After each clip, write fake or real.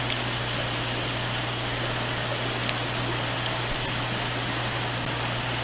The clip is real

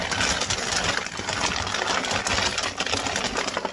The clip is real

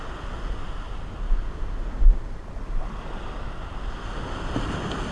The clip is real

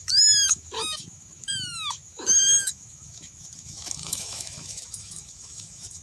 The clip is fake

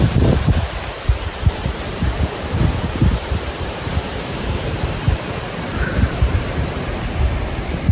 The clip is fake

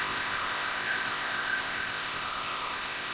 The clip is fake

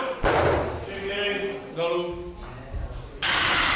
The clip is real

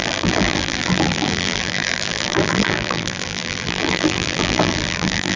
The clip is fake